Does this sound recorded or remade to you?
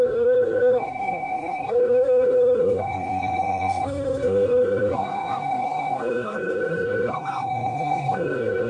remade